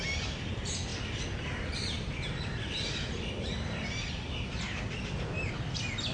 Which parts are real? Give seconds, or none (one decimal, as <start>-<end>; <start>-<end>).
0.0-6.1